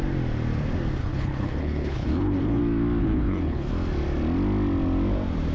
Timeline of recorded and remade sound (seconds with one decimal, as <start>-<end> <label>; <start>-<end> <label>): 0.0-1.0 recorded; 1.0-2.6 remade; 2.6-3.0 recorded; 3.0-3.7 remade; 3.7-5.5 recorded